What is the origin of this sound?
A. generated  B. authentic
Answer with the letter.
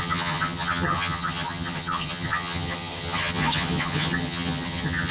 A